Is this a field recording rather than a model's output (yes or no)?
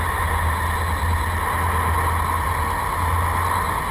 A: yes